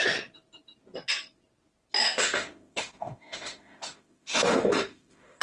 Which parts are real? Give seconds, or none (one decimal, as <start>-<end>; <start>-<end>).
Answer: 0.0-2.0